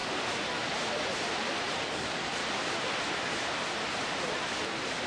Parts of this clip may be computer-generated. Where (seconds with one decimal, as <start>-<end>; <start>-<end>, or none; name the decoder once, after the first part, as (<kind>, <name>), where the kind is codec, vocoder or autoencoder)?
1.8-2.4 (codec, DAC)